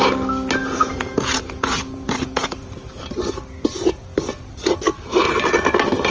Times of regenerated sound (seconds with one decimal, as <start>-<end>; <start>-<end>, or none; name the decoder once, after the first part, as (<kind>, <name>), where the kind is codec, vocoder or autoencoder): 0.6-3.0 (vocoder, Vocos)